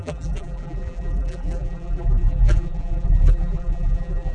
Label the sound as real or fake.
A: fake